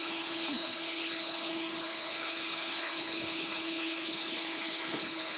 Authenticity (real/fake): fake